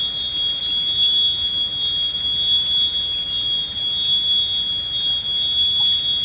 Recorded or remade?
recorded